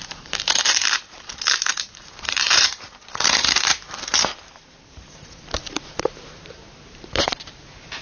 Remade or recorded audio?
remade